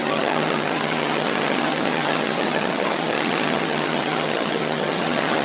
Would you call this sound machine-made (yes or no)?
yes